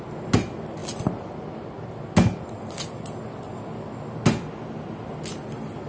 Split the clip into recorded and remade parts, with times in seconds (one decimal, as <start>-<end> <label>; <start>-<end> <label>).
0.0-5.9 recorded